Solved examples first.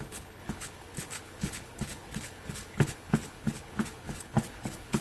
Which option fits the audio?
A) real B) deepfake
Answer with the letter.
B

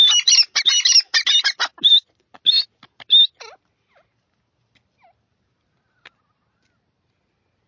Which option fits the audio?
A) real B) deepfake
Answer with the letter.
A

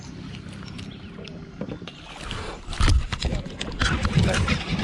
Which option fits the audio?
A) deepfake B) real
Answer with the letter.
B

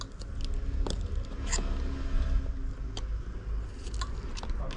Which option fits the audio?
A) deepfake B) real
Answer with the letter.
B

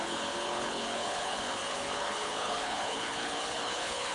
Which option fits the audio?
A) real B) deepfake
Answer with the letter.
B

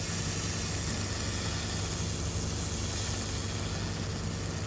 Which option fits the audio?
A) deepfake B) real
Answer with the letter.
B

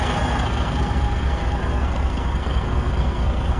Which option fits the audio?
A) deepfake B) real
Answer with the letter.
A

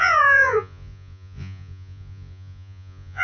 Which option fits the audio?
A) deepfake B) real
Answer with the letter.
A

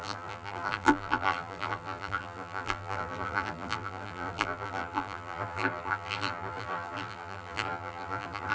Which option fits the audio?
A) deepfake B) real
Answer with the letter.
A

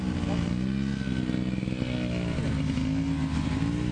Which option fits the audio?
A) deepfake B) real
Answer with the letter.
B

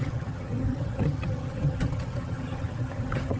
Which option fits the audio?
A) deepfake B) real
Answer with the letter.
A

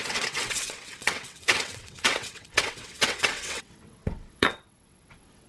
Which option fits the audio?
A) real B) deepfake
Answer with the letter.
B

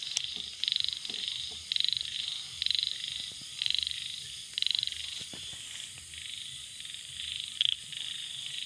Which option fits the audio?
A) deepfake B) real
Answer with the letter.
B